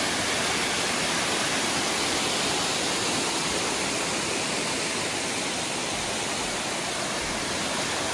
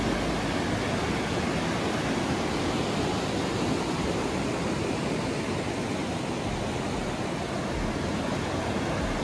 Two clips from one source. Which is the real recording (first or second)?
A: second